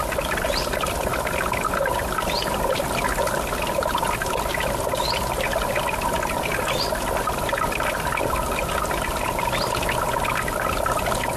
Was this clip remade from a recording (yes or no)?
no